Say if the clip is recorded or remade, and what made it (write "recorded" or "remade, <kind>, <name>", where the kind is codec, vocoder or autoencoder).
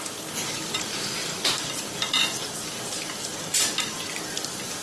recorded